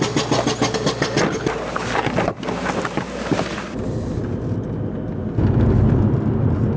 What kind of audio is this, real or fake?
real